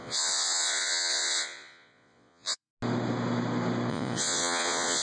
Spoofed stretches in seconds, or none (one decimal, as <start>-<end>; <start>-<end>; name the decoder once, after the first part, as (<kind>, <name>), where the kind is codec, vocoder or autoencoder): 0.0-2.7 (vocoder, Vocos); 3.9-5.0